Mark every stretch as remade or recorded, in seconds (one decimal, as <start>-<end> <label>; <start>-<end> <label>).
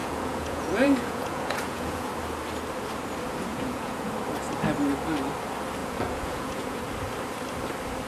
0.0-2.1 remade; 2.1-3.5 recorded; 3.5-4.1 remade; 4.1-5.8 recorded; 5.8-6.8 remade; 6.8-8.1 recorded